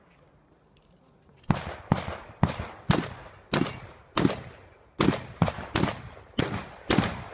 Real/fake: real